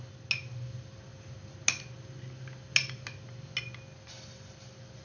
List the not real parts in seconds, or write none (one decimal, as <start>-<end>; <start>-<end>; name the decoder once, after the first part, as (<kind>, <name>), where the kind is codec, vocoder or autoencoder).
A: none